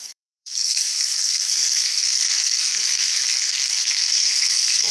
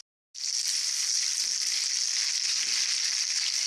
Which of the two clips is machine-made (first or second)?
first